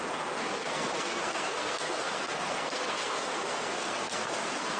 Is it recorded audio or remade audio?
remade